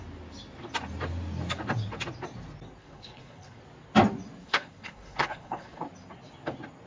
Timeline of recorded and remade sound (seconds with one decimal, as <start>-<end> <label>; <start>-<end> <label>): 0.0-2.8 recorded; 2.8-3.6 remade; 3.6-4.4 recorded; 4.4-5.8 remade; 5.8-6.9 recorded